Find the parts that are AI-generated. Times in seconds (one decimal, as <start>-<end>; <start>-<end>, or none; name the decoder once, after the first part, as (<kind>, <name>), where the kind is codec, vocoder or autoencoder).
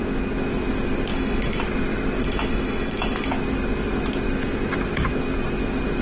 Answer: 1.1-1.6 (autoencoder, DAC-VAE); 2.2-3.3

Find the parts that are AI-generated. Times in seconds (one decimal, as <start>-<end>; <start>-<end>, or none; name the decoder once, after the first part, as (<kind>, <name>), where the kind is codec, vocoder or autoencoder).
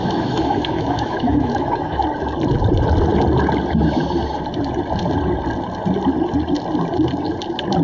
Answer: 0.0-2.0 (autoencoder, DAC-VAE)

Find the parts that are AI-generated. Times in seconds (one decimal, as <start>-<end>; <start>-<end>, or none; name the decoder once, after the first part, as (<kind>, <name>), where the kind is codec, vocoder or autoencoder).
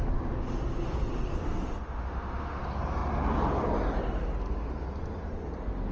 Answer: 1.4-2.6 (autoencoder, DAC-VAE)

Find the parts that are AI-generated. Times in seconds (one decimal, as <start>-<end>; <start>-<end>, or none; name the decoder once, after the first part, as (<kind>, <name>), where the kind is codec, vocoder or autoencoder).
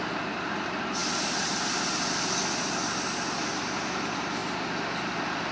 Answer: none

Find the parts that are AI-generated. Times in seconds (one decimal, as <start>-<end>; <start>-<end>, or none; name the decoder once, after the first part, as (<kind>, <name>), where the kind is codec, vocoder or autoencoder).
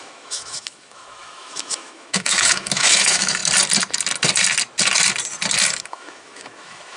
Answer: 0.0-3.4 (autoencoder, DAC-VAE); 5.8-7.0